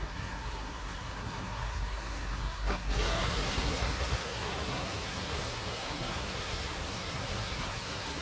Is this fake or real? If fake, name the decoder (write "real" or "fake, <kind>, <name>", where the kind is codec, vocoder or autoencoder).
fake, codec, SNAC